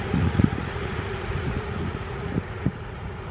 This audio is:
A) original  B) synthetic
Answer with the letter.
B